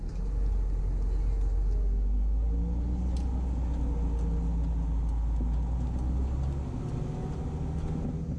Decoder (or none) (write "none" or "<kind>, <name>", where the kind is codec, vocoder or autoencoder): none